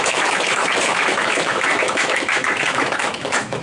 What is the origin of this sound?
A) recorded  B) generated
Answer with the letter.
B